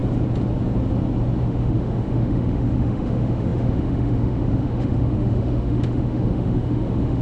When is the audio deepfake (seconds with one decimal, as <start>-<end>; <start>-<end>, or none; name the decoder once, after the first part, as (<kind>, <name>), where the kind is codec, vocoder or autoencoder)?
1.4-7.2 (autoencoder, DAC-VAE)